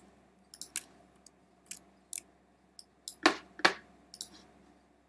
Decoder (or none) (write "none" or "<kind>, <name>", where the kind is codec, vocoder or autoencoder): none